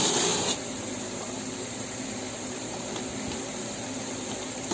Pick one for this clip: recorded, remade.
remade